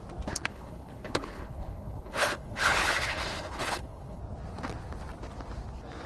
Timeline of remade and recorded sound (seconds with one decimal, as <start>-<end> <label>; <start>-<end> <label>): 0.0-0.5 recorded; 0.5-4.2 remade; 4.2-6.1 recorded